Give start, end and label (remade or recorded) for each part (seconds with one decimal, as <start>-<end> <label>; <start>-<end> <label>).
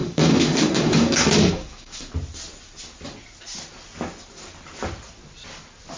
0.0-2.0 remade; 2.0-6.0 recorded